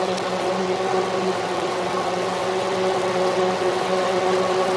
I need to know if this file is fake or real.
fake